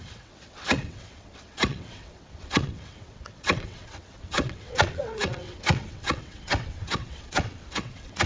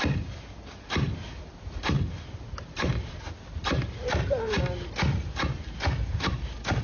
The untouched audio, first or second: second